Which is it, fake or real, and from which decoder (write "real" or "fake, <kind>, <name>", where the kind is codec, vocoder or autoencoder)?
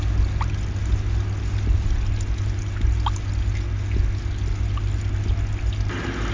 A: real